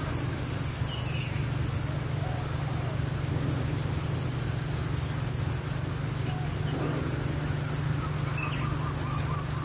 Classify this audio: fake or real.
real